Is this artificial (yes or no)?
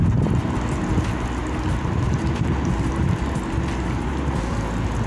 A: no